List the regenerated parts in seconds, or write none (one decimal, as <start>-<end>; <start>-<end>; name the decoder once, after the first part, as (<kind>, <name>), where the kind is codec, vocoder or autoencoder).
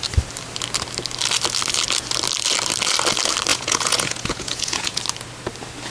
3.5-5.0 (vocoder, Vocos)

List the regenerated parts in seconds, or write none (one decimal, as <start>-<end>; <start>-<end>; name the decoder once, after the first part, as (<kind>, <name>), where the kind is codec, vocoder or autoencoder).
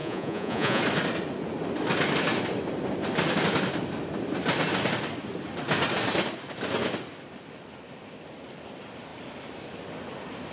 0.0-0.8 (vocoder, Vocos)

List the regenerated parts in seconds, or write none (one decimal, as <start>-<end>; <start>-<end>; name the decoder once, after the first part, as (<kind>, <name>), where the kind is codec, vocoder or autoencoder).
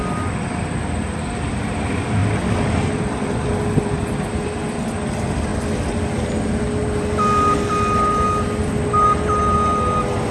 none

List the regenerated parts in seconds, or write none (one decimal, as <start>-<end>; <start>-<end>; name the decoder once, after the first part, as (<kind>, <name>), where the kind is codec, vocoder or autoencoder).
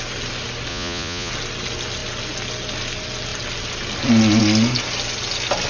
0.7-1.3 (vocoder, Vocos)